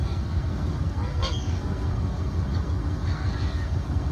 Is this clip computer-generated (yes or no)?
yes